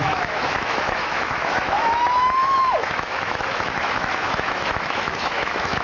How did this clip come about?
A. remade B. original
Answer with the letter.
A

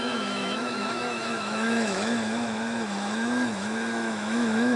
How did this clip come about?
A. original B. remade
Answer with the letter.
B